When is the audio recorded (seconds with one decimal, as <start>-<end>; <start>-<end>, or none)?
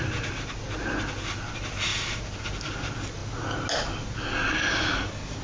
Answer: 0.0-5.4